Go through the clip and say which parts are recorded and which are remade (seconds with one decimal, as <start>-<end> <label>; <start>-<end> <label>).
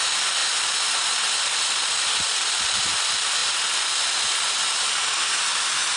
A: 0.0-6.0 recorded